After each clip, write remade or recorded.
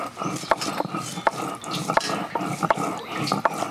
recorded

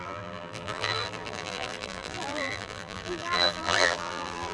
remade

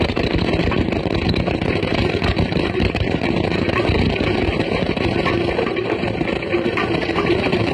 remade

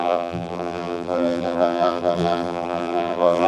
remade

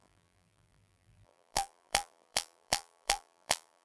remade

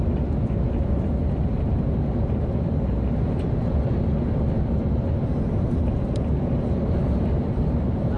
recorded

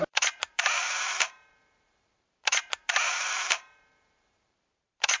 remade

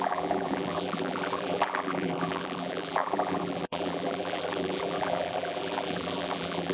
remade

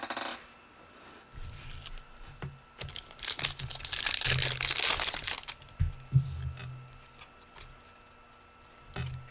recorded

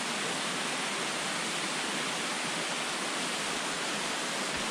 recorded